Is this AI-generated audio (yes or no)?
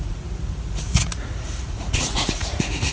yes